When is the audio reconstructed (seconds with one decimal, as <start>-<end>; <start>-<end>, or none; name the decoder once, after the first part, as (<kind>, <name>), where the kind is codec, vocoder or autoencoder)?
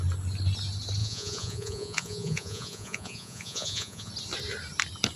1.0-4.1 (vocoder, Vocos)